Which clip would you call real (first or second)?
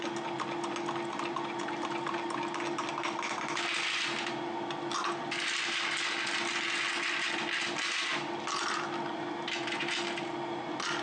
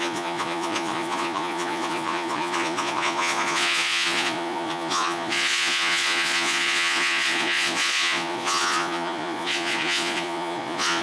first